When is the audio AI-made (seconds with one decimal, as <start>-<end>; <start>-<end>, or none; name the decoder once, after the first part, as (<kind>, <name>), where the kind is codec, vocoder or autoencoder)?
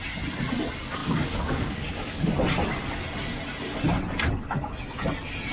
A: 1.0-2.3 (codec, DAC)